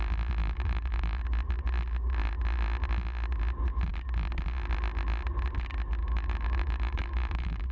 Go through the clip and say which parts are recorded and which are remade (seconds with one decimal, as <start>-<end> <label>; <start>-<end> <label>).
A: 0.0-0.4 recorded; 0.4-1.2 remade; 1.2-6.0 recorded; 6.0-7.7 remade